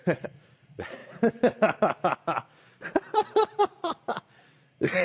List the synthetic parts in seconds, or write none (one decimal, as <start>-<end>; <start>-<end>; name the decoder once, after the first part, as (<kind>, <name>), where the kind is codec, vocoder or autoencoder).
0.0-1.0 (vocoder, Vocos); 3.6-5.0